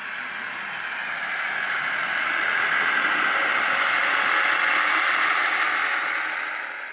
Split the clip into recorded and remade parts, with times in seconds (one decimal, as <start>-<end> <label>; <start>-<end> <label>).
0.0-6.9 recorded